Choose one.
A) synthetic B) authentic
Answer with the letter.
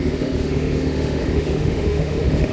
A